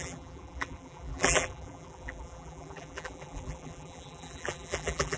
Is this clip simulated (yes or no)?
yes